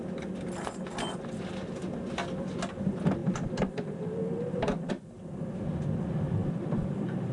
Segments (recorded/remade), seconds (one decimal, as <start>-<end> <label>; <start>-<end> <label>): 0.0-3.2 recorded; 3.2-4.9 remade; 4.9-6.4 recorded; 6.4-7.3 remade